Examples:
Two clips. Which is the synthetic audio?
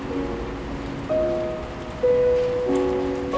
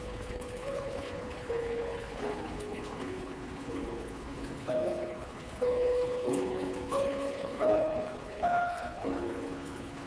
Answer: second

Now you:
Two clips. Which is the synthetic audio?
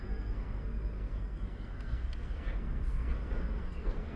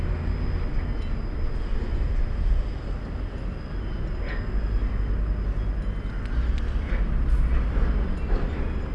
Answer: first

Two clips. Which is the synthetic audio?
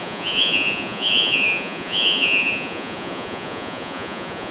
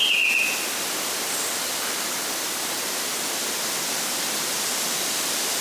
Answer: first